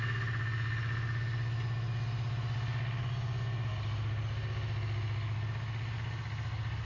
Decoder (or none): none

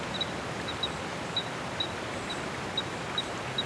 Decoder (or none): none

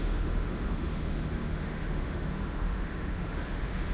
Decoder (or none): autoencoder, DAC-VAE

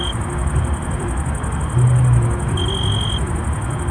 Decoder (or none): none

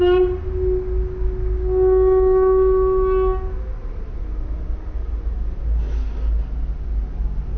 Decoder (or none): none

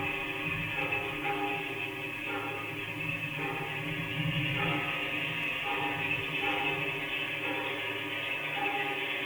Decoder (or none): none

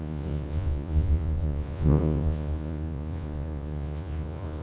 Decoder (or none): vocoder, Vocos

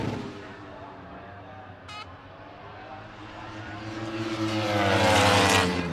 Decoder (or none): vocoder, BigVGAN v2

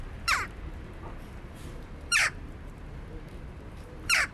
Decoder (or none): vocoder, BigVGAN v2